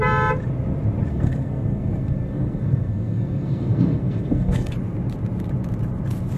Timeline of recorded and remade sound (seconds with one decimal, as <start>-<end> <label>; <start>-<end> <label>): 0.0-1.1 recorded; 1.1-4.7 remade; 4.7-6.4 recorded